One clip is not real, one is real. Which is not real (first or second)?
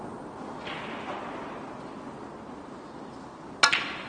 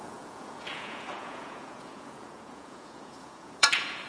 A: second